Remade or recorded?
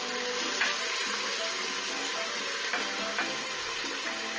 recorded